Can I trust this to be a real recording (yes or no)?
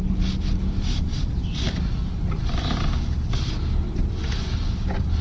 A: yes